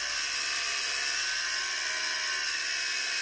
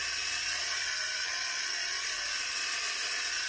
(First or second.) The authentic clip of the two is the first